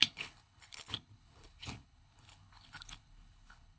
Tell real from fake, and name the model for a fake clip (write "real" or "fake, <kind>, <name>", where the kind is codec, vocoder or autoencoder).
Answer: fake, codec, HILCodec